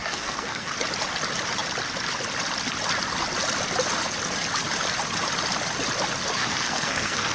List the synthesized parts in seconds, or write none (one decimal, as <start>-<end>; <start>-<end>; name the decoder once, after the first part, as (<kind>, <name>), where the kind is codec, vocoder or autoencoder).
0.0-0.7 (codec, SNAC); 6.4-7.3